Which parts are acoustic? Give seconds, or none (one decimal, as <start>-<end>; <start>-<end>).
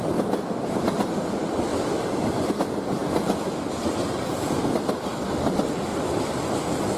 0.0-1.7; 2.5-3.0; 3.8-5.9